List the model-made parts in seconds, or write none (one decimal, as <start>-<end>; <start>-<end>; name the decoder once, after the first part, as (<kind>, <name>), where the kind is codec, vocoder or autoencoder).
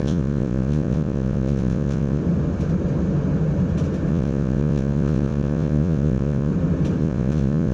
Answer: 0.0-2.2 (vocoder, Vocos); 4.1-6.5; 7.0-7.7